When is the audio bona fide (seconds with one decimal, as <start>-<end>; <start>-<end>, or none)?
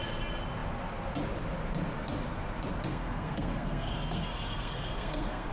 0.0-2.9